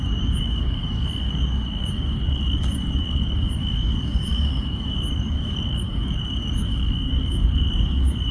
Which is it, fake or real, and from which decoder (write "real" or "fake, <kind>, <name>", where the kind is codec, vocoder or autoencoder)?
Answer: fake, codec, DAC